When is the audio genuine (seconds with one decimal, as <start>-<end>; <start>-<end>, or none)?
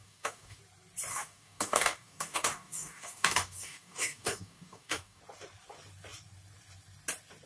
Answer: 0.6-1.1; 5.2-7.5